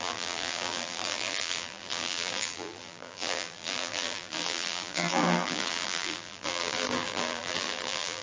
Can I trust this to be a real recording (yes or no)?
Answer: no